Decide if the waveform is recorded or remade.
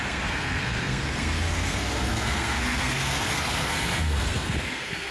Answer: remade